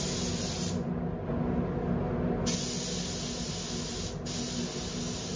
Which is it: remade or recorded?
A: recorded